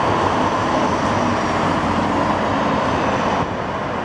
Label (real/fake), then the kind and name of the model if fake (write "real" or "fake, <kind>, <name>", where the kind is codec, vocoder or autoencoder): real